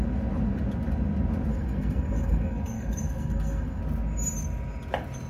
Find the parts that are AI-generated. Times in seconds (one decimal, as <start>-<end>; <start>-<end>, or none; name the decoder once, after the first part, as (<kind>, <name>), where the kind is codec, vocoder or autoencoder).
1.5-3.8 (codec, SNAC)